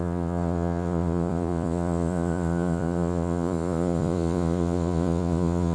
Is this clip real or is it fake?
fake